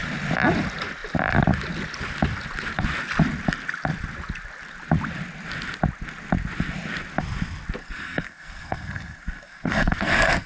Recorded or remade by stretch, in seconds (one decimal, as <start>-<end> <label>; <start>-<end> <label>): 0.0-7.8 recorded; 7.8-10.5 remade